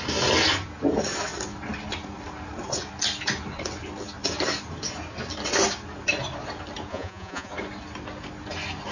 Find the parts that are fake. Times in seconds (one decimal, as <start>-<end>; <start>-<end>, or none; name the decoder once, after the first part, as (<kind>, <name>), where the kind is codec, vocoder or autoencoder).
6.9-7.5 (vocoder, Vocos)

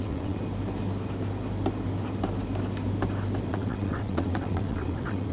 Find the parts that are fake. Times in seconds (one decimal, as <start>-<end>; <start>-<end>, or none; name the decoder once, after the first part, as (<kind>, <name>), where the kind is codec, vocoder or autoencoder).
0.0-0.4 (vocoder, WaveNeXt); 3.5-5.3

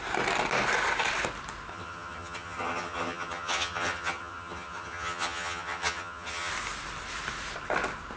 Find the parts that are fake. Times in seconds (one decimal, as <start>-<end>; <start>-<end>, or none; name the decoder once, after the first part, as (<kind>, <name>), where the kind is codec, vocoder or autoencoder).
1.7-6.5 (vocoder, HiFi-GAN)

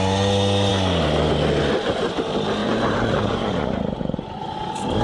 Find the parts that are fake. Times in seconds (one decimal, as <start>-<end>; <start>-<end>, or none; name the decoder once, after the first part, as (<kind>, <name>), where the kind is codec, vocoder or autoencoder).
2.6-5.0 (vocoder, Vocos)

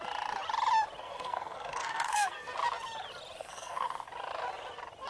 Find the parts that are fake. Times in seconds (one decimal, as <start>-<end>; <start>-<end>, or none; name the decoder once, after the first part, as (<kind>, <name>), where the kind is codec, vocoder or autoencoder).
1.0-2.5 (codec, SNAC); 3.4-4.1

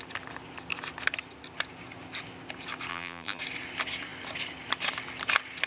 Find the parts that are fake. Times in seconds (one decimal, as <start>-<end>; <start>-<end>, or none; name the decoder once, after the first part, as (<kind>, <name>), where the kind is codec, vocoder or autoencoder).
2.9-3.4 (vocoder, BigVGAN v2)